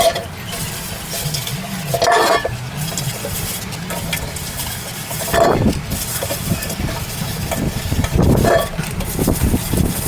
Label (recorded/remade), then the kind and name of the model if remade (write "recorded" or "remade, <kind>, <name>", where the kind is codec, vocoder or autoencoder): recorded